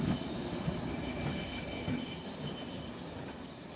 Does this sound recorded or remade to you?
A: recorded